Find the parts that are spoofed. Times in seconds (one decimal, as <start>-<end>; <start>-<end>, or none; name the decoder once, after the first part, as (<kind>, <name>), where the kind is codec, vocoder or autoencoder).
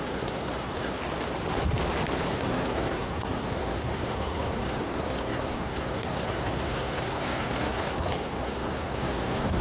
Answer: 0.0-1.0 (codec, SNAC); 2.3-9.6